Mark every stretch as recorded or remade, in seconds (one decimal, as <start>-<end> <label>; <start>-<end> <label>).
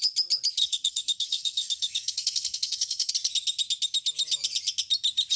0.0-0.6 recorded; 0.6-3.1 remade; 3.1-5.4 recorded